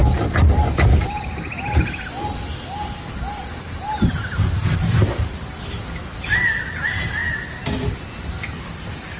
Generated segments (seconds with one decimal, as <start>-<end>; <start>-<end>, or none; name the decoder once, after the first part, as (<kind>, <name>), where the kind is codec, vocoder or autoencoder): 4.6-6.0 (vocoder, BigVGAN v2); 7.2-8.6